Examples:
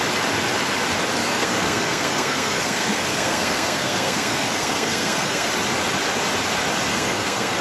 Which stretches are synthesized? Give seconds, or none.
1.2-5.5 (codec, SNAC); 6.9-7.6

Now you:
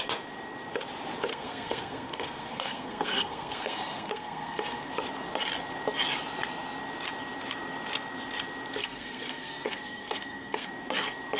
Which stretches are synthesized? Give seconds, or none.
1.3-4.9 (codec, SNAC); 8.8-10.7

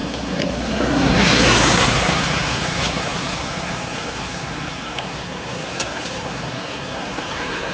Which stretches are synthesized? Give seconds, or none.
0.0-7.7 (codec, SNAC)

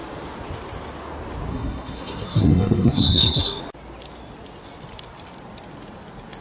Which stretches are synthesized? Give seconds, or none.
1.5-3.6 (codec, SNAC)